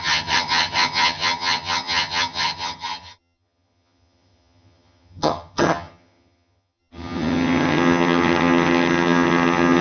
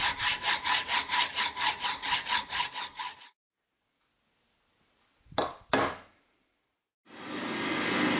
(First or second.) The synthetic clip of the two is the first